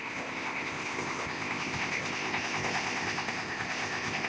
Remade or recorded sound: remade